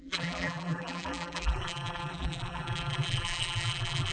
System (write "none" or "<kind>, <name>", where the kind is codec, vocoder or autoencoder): vocoder, BigVGAN v2